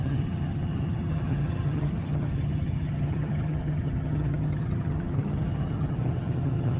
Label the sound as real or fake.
fake